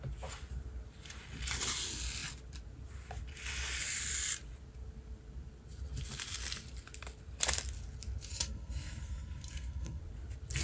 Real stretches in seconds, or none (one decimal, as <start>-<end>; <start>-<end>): 0.0-8.3; 10.0-10.6